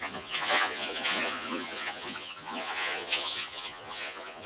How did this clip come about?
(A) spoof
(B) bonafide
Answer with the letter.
A